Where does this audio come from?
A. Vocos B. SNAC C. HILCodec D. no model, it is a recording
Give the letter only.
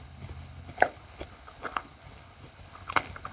C